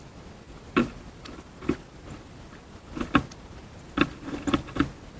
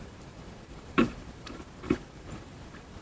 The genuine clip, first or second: first